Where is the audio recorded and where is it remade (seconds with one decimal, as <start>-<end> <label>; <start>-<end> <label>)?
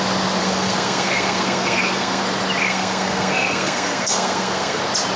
0.0-0.4 recorded; 0.4-2.2 remade; 2.2-2.6 recorded; 2.6-4.8 remade; 4.8-5.2 recorded